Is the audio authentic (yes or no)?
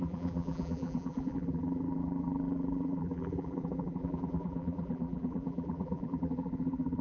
no